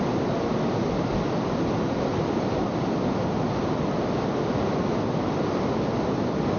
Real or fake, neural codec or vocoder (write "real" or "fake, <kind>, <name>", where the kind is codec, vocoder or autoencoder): real